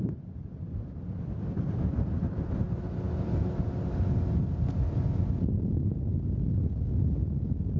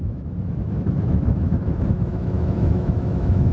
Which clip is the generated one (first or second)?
second